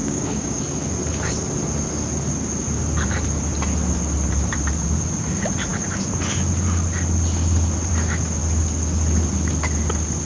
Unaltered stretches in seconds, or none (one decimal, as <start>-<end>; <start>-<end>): 0.6-10.2